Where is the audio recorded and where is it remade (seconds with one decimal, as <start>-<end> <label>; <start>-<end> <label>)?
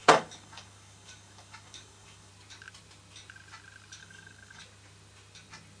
0.0-2.3 remade; 2.3-4.0 recorded; 4.0-4.6 remade; 4.6-5.8 recorded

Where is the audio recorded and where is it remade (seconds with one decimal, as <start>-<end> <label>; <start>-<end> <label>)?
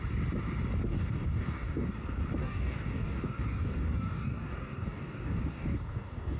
0.0-0.9 recorded; 0.9-1.9 remade; 1.9-2.4 recorded; 2.4-6.4 remade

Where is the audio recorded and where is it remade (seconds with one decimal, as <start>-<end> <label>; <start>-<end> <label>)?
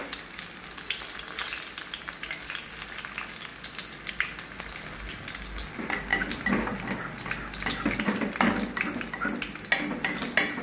0.0-10.6 recorded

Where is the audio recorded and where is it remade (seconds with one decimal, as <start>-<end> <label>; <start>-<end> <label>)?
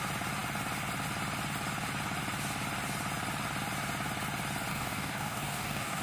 0.0-4.7 recorded; 4.7-6.0 remade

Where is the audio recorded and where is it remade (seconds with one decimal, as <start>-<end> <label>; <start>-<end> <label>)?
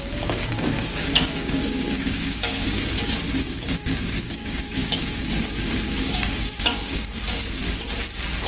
0.0-7.6 remade; 7.6-8.5 recorded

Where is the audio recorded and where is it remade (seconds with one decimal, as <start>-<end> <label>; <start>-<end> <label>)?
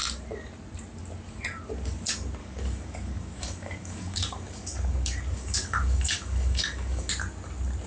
0.0-2.4 recorded; 2.4-7.1 remade; 7.1-7.9 recorded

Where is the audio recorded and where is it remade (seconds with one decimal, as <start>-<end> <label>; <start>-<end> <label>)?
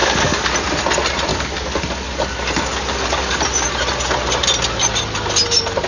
0.0-0.5 remade; 0.5-1.3 recorded; 1.3-3.4 remade; 3.4-5.9 recorded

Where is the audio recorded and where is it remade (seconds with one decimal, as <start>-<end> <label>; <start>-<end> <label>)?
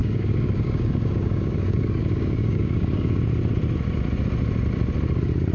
0.0-3.2 remade; 3.2-5.5 recorded